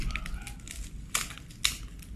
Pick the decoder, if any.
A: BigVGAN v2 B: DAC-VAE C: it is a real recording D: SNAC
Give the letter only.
C